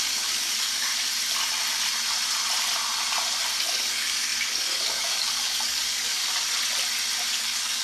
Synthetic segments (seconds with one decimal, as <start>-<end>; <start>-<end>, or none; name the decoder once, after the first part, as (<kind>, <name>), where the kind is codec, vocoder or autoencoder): 0.0-0.9 (codec, DAC); 3.6-6.2; 7.3-7.8